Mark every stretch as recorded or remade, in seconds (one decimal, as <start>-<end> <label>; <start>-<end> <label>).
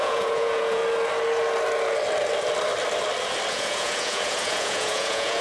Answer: 0.0-0.8 remade; 0.8-3.5 recorded; 3.5-5.4 remade